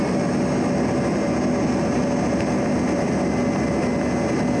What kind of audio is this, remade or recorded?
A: recorded